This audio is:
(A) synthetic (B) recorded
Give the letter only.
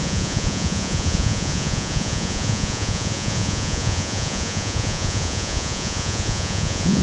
A